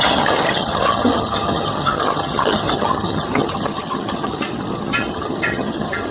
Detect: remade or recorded remade